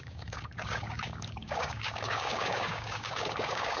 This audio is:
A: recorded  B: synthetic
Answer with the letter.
B